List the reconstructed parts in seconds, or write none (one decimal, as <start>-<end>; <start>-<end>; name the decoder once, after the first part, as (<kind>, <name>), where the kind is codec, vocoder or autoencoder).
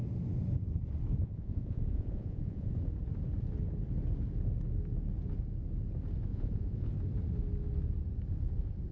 1.2-2.7 (vocoder, Vocos); 6.3-6.9